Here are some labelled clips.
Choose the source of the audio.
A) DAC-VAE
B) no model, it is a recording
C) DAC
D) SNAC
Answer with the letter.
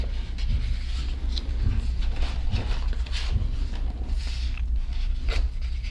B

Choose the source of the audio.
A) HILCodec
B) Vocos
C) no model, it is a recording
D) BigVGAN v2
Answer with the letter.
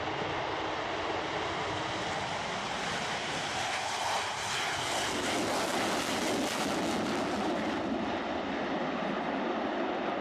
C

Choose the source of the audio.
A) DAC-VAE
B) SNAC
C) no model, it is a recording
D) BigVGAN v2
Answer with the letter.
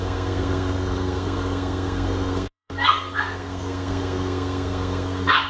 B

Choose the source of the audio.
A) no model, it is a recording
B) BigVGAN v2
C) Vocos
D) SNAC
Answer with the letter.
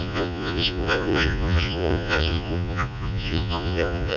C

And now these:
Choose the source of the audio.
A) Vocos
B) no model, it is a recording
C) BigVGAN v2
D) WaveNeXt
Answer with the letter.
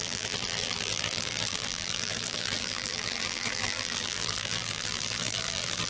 C